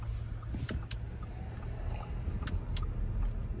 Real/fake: real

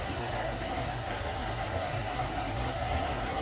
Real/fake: fake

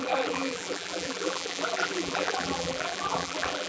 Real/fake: fake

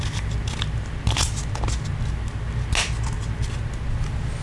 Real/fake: real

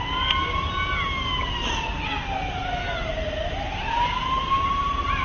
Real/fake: real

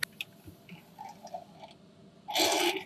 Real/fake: real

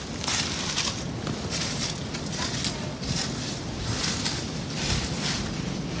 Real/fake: real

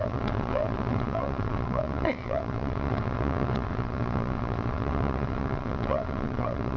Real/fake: fake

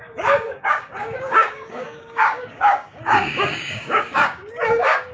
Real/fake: fake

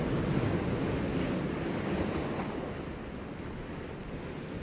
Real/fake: real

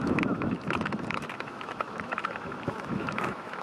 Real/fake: fake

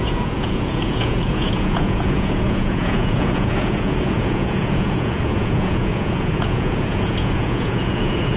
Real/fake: fake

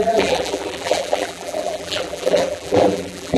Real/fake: fake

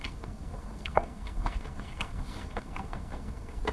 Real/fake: fake